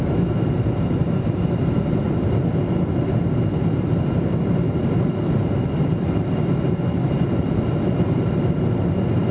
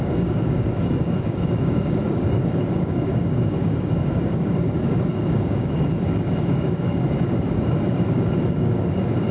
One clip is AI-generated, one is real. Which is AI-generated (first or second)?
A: second